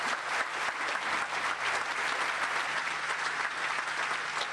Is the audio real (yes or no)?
yes